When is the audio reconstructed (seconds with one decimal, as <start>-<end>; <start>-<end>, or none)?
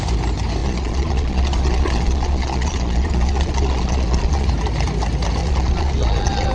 0.6-4.5; 5.4-6.5